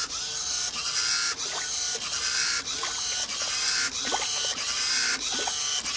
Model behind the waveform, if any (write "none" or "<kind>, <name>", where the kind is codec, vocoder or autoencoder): none